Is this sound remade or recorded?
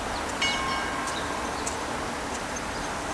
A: recorded